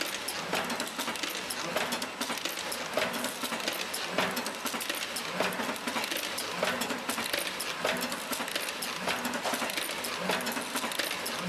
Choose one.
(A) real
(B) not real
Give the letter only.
A